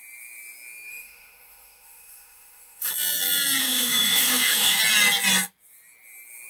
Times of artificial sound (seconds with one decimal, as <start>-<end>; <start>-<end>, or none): 0.9-2.9; 3.6-4.8